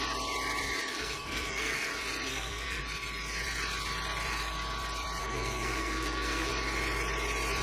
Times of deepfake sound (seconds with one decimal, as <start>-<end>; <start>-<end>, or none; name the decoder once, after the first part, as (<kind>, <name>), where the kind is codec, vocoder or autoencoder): 0.9-1.9 (codec, SNAC); 2.3-2.8; 5.2-6.5